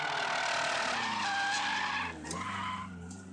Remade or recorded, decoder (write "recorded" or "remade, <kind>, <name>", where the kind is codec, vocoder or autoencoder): recorded